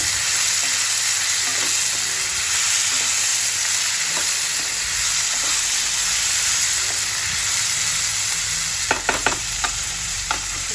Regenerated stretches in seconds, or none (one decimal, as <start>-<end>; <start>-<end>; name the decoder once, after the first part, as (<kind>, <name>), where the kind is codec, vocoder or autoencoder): 9.2-10.7 (vocoder, BigVGAN v2)